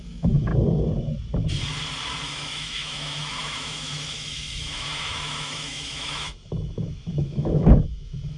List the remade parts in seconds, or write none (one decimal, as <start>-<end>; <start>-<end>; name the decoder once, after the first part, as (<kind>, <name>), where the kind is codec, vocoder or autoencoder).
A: 0.0-0.5 (autoencoder, DAC-VAE); 2.3-8.4